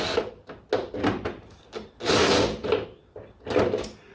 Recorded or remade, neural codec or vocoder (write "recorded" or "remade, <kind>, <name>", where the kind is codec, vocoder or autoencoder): recorded